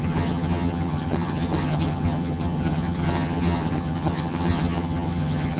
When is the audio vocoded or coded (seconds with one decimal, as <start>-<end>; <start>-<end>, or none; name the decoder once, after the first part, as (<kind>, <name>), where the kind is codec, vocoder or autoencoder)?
0.0-5.6 (vocoder, HiFi-GAN)